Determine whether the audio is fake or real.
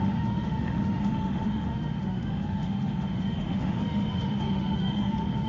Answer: fake